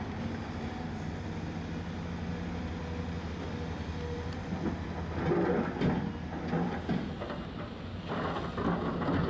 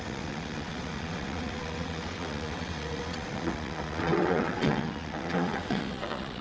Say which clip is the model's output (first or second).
second